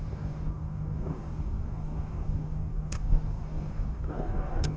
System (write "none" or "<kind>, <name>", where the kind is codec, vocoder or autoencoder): codec, DAC